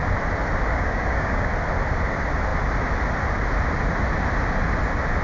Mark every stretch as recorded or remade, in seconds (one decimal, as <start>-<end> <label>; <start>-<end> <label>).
0.0-0.7 recorded; 0.7-1.5 remade; 1.5-5.2 recorded